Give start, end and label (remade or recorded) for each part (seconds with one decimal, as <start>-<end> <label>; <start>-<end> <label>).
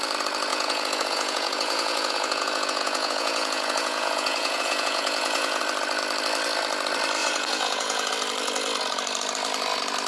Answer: 0.0-0.5 recorded; 0.5-5.6 remade; 5.6-7.2 recorded; 7.2-8.1 remade; 8.1-10.1 recorded